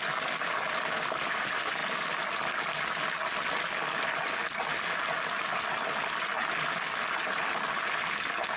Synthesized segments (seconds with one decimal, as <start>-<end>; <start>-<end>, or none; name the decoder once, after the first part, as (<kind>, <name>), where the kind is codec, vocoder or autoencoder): none